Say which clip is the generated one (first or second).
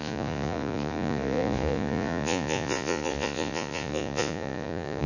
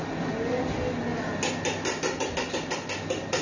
first